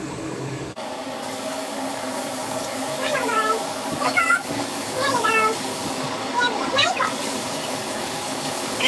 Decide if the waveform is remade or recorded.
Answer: remade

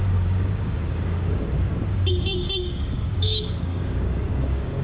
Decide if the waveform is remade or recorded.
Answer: remade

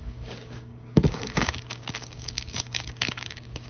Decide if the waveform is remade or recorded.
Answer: remade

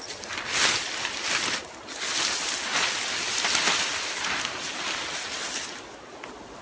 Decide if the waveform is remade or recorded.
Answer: recorded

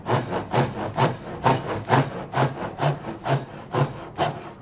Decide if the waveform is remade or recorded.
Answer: recorded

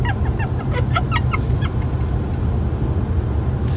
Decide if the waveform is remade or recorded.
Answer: recorded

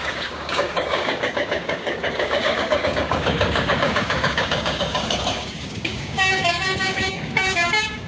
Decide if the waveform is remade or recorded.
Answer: remade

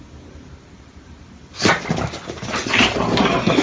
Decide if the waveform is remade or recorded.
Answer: recorded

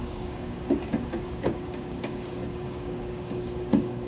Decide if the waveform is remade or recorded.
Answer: remade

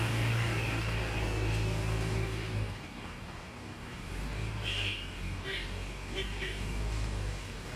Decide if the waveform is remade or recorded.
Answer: remade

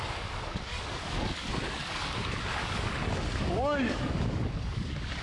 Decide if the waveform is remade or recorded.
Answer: remade